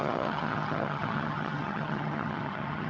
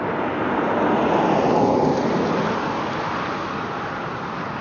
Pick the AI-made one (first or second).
first